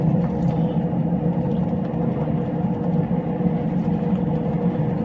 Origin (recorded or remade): recorded